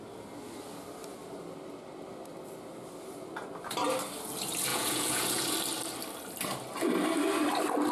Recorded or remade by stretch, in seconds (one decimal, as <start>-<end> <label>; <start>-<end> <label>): 0.0-4.7 recorded; 4.7-5.4 remade; 5.4-7.9 recorded